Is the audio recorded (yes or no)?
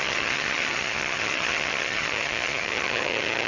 no